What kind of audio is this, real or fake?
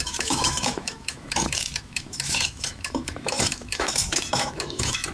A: fake